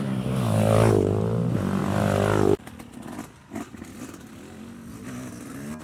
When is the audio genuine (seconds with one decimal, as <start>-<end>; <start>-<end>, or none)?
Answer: 0.0-5.8

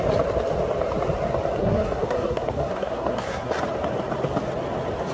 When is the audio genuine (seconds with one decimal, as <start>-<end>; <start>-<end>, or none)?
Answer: 0.0-1.6; 3.5-5.1

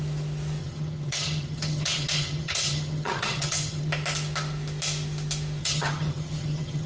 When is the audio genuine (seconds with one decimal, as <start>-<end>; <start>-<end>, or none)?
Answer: 0.0-0.6; 3.9-5.6